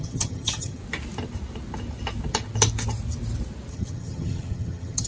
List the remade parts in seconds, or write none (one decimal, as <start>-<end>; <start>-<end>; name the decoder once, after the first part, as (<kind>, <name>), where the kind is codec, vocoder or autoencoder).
0.0-0.8 (vocoder, HiFi-GAN); 3.7-5.1

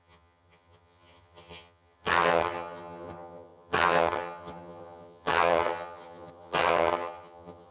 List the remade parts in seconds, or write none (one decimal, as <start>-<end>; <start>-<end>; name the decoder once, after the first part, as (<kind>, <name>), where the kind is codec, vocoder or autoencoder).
0.0-7.7 (vocoder, HiFi-GAN)

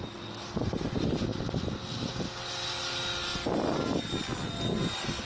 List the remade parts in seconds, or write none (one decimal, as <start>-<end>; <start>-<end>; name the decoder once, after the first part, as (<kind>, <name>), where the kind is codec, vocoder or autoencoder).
none

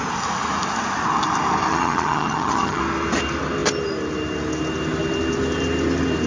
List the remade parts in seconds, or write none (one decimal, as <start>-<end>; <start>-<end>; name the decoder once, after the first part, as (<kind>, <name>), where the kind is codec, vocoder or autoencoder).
1.7-2.8 (vocoder, HiFi-GAN)

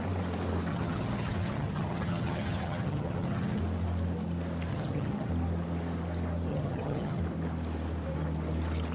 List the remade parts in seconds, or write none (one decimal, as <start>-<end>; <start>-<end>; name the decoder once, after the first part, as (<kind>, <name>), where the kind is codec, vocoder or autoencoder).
0.7-3.6 (vocoder, HiFi-GAN); 4.7-5.3; 6.5-7.2

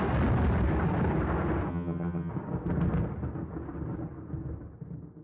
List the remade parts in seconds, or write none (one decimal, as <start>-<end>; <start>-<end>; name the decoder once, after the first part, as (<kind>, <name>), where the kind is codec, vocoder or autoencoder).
1.7-2.3 (vocoder, HiFi-GAN)

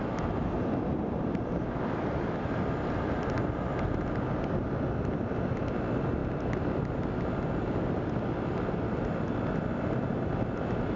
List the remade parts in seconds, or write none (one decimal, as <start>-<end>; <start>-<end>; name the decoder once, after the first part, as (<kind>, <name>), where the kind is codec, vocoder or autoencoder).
none